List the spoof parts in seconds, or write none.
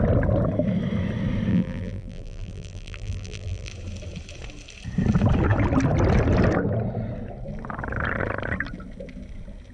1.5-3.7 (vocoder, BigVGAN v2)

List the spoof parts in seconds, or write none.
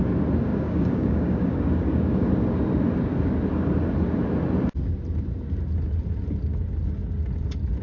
0.5-2.3 (codec, DAC)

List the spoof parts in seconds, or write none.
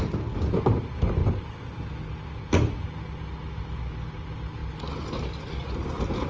none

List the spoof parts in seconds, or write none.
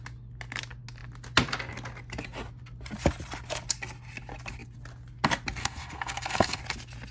5.6-6.6 (codec, SNAC)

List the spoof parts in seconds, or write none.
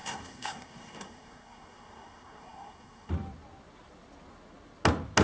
0.0-3.1 (codec, SNAC)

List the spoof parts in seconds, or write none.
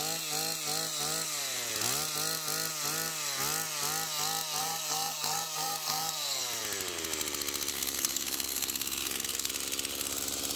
4.6-6.4 (codec, SNAC); 7.7-9.5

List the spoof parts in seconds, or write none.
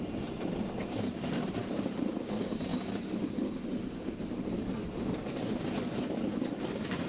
0.0-2.7 (vocoder, BigVGAN v2); 6.5-7.1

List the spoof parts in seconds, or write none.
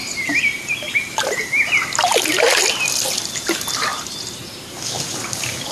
0.0-2.5 (vocoder, BigVGAN v2); 3.9-4.8